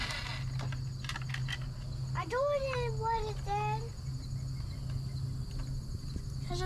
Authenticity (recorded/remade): recorded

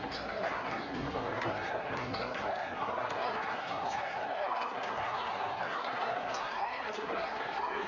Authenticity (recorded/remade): remade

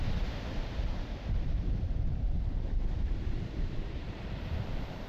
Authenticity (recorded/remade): remade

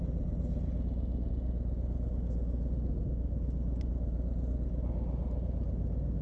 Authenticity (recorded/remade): recorded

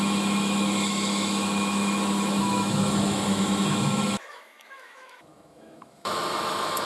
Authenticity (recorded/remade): remade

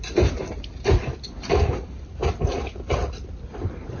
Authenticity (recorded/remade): recorded